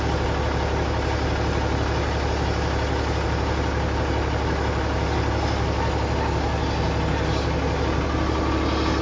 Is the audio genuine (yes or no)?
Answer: yes